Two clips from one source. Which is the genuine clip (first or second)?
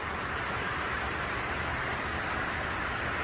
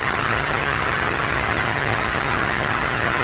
first